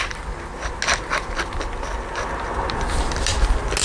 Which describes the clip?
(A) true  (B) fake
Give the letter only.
A